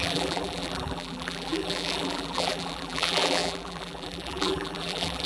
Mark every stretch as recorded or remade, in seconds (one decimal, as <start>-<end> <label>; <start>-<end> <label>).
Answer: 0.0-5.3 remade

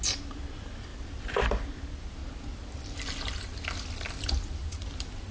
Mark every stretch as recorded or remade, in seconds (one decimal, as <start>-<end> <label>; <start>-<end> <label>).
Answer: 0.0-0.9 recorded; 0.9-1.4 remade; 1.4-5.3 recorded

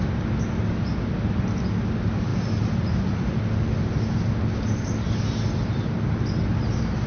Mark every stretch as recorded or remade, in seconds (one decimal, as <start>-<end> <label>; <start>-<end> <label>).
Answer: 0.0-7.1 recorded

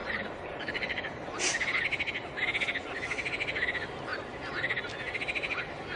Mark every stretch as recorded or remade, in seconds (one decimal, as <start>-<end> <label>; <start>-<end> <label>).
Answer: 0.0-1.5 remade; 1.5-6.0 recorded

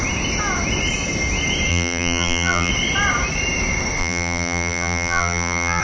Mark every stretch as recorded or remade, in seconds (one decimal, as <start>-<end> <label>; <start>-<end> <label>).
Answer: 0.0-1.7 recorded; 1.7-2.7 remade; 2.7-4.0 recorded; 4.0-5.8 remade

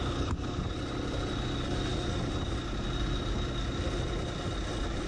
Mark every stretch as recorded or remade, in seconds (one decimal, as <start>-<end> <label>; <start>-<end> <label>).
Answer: 0.0-5.1 recorded

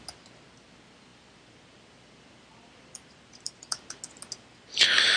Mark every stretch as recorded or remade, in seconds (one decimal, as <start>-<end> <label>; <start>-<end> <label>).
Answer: 0.0-1.1 recorded; 1.1-4.0 remade; 4.0-5.2 recorded

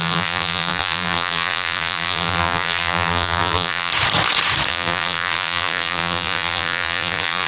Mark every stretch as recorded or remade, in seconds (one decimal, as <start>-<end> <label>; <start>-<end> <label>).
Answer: 0.0-3.9 remade; 3.9-4.7 recorded; 4.7-7.5 remade